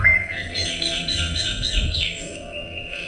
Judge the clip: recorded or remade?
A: remade